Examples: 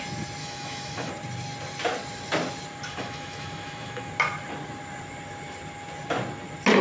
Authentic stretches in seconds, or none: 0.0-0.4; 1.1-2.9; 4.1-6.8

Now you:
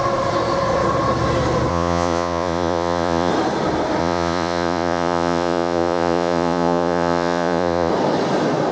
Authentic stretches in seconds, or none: 0.0-1.7; 3.3-4.0; 7.9-8.7

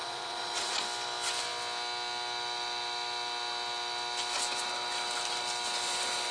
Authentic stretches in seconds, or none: 0.8-6.3

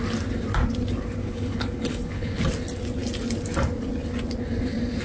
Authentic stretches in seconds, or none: 0.0-1.2; 2.4-5.0

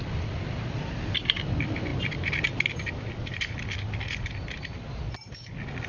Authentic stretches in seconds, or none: 1.9-4.1

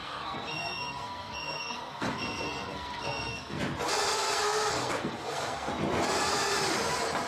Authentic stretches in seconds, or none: 3.6-4.1; 5.7-7.3

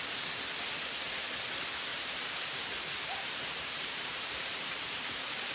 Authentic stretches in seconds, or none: 0.0-1.9

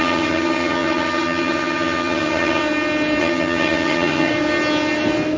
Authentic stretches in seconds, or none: 2.6-3.2; 4.3-5.4